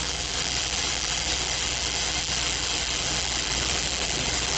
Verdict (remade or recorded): remade